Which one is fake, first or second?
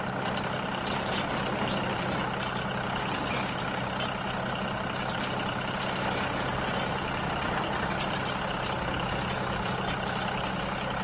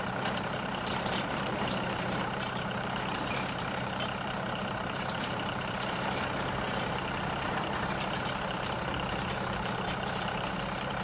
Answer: second